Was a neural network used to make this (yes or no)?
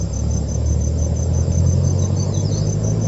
no